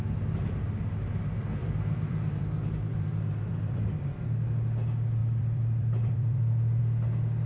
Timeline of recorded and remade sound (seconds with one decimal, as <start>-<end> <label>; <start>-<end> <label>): 0.0-1.6 recorded; 1.6-2.4 remade; 2.4-2.9 recorded; 2.9-3.8 remade; 3.8-5.2 recorded; 5.2-6.8 remade; 6.8-7.5 recorded